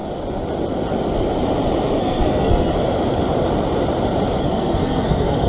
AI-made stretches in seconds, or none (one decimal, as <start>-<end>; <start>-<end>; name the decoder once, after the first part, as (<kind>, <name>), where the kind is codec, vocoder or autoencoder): 2.0-2.7 (codec, SNAC); 4.4-5.5